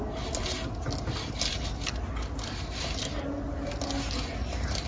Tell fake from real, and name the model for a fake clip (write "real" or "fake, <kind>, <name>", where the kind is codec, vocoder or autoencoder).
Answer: real